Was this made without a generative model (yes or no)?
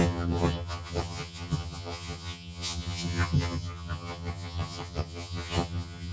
no